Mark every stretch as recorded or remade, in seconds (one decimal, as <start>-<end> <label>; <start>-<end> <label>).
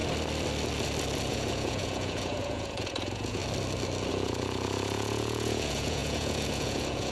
0.0-1.3 recorded; 1.3-3.4 remade; 3.4-4.1 recorded; 4.1-7.1 remade